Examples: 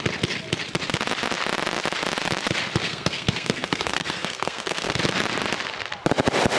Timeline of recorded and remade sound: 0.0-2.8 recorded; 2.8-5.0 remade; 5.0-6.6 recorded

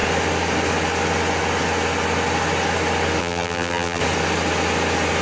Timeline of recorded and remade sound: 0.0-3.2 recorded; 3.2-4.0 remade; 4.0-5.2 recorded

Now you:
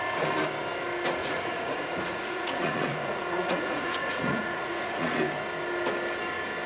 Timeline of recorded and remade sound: 0.0-1.2 recorded; 1.2-5.2 remade; 5.2-6.7 recorded

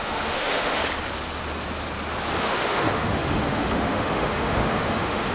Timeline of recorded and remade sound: 0.0-0.8 remade; 0.8-2.4 recorded; 2.4-5.3 remade

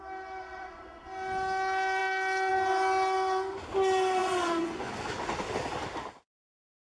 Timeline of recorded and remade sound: 0.0-0.4 recorded; 0.4-1.0 remade; 1.0-4.2 recorded; 4.2-4.9 remade; 4.9-6.9 recorded